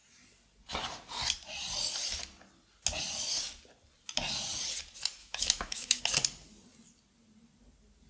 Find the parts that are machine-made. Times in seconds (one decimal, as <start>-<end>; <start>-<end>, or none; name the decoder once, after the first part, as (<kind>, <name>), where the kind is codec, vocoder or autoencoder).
5.2-6.0 (autoencoder, DAC-VAE)

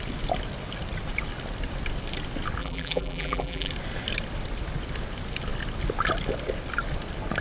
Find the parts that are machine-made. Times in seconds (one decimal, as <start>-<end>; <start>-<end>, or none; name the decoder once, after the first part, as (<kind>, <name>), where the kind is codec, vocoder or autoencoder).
2.6-3.7 (vocoder, BigVGAN v2)

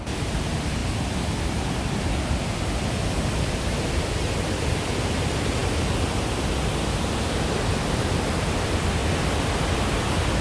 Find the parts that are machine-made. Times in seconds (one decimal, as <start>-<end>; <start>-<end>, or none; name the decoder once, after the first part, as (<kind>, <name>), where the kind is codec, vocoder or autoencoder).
0.0-0.8 (vocoder, BigVGAN v2); 1.8-5.6; 7.3-9.0; 9.6-10.4

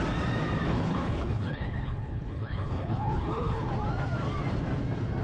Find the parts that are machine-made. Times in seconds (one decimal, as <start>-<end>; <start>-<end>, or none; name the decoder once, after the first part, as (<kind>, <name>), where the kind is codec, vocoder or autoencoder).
0.7-3.7 (codec, HILCodec)